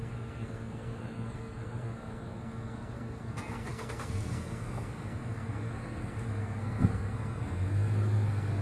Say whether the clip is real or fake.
fake